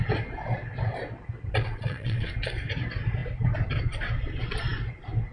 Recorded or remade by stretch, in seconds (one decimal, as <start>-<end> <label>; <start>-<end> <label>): 0.0-1.6 recorded; 1.6-2.3 remade; 2.3-5.3 recorded